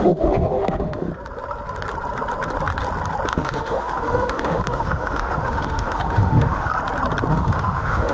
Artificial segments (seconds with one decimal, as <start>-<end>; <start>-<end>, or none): 0.0-1.1; 3.3-6.7; 7.3-8.1